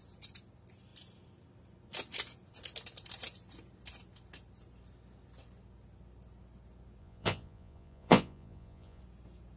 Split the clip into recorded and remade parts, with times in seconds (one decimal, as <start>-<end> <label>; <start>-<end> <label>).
0.0-7.0 recorded; 7.0-9.0 remade; 9.0-9.6 recorded